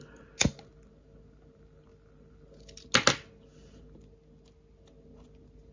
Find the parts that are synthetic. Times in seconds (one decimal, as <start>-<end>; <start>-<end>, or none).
none